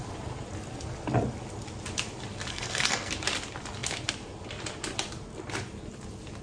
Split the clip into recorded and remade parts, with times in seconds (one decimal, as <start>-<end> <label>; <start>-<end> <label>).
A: 0.0-2.5 recorded; 2.5-3.1 remade; 3.1-6.4 recorded